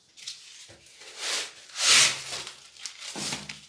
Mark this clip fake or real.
real